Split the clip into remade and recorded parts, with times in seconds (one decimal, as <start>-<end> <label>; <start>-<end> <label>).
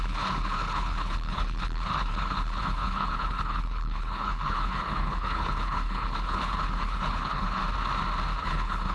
0.0-7.6 remade; 7.6-8.4 recorded; 8.4-8.9 remade